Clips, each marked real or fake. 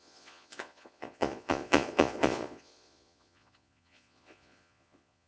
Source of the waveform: fake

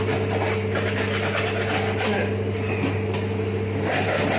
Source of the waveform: real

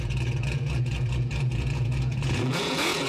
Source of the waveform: fake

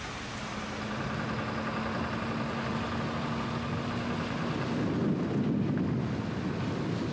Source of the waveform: real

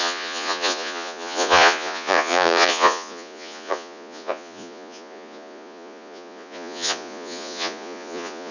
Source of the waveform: fake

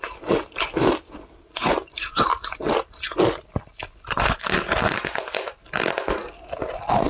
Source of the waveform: real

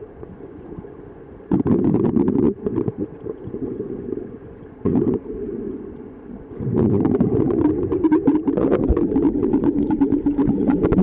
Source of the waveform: fake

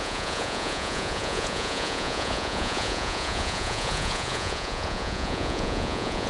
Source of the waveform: fake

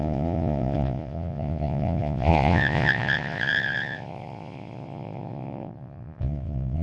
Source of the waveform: fake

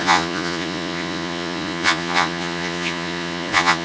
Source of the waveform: fake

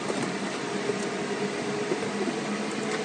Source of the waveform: real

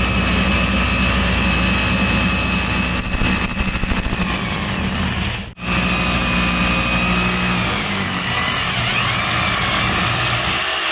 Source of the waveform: real